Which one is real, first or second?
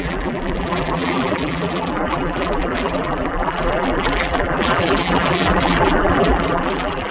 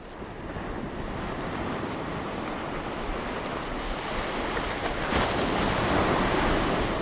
second